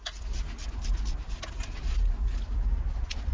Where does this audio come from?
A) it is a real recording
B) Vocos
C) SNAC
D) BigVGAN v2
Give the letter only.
A